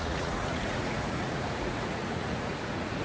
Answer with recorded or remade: remade